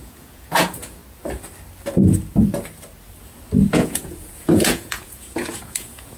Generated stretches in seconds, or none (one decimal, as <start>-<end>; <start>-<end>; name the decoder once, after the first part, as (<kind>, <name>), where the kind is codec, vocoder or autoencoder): 0.0-1.0 (vocoder, Vocos); 3.7-6.2